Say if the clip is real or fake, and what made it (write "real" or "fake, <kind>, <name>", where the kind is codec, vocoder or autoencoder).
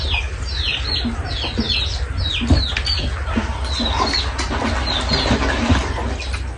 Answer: real